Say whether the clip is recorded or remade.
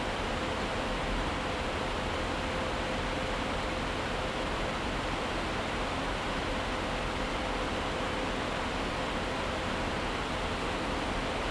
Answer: recorded